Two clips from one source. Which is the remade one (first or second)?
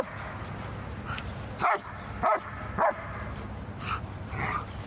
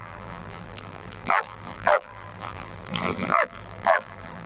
second